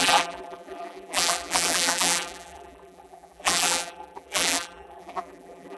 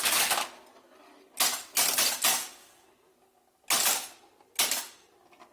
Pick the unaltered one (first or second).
second